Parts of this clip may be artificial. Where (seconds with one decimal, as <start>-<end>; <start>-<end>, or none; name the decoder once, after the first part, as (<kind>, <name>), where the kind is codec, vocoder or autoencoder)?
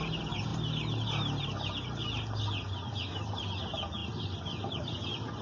none